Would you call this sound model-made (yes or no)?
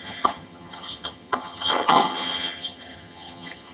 yes